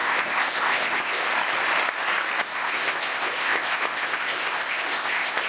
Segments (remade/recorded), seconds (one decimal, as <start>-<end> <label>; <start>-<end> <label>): 0.0-1.2 remade; 1.2-2.4 recorded; 2.4-5.5 remade